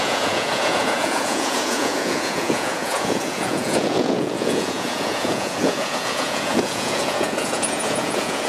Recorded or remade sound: remade